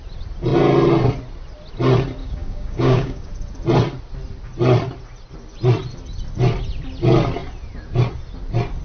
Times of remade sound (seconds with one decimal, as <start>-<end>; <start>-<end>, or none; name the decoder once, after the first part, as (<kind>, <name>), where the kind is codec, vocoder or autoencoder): 2.2-3.3 (codec, DAC)